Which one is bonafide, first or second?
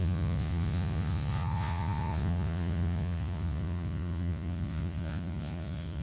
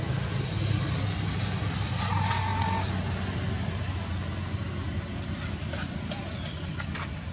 second